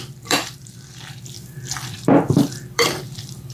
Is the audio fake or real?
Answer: fake